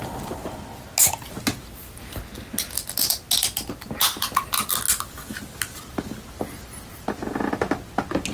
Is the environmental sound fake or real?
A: real